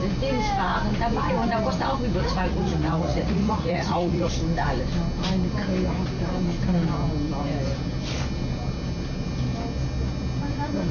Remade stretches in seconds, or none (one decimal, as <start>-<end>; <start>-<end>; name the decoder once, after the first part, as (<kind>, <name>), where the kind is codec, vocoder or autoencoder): 2.2-4.3 (vocoder, Vocos)